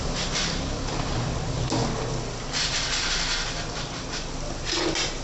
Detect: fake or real real